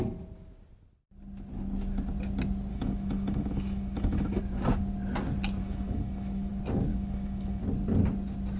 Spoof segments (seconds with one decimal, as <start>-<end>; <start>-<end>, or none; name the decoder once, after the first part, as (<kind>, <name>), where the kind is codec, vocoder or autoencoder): 2.7-4.4 (autoencoder, DAC-VAE); 5.6-6.5; 6.9-7.6